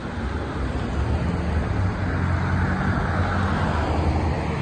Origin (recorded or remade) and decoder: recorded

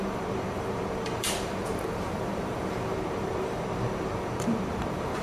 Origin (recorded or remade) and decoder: remade, vocoder, BigVGAN v2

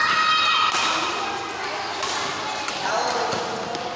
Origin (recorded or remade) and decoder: recorded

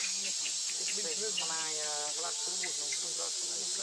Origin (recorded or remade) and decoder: recorded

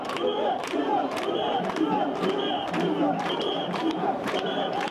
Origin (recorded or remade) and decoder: remade, vocoder, BigVGAN v2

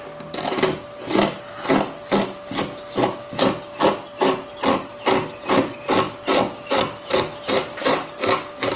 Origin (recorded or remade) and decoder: recorded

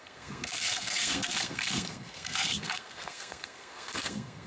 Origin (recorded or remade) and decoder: remade, codec, SNAC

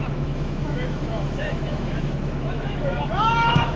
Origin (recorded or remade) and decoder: remade, autoencoder, DAC-VAE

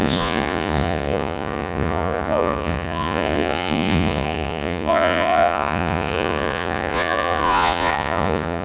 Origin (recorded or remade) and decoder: remade, vocoder, Vocos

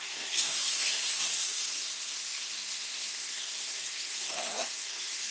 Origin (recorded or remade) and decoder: remade, codec, SNAC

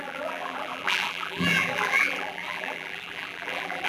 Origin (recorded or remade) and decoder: remade, vocoder, BigVGAN v2